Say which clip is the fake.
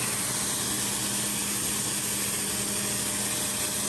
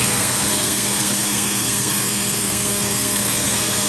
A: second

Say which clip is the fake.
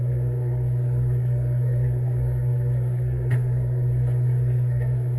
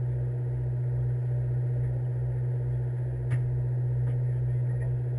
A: first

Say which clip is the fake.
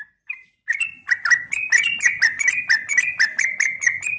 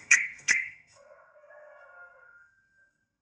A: second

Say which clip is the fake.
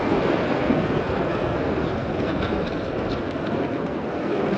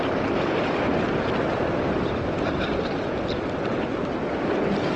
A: first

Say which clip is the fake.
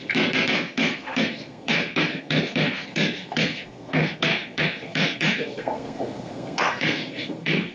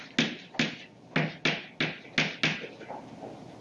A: first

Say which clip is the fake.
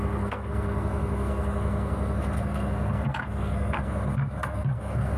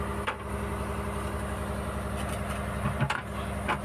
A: first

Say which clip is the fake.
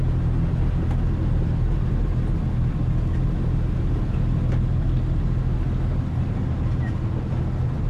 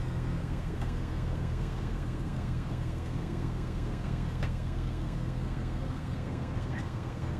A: second